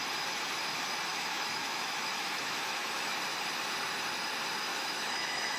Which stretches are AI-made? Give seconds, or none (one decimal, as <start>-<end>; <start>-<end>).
1.1-3.1; 4.7-5.6